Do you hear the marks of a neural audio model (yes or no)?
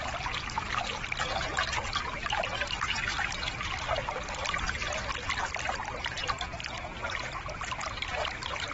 yes